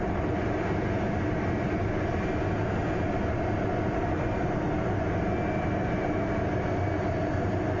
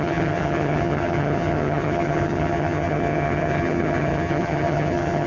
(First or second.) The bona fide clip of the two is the first